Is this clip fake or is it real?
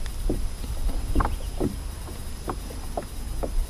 real